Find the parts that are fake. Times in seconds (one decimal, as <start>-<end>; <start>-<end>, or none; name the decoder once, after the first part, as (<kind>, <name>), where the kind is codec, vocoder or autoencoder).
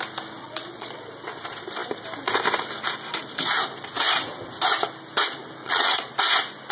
0.4-1.0 (vocoder, Vocos); 5.6-6.1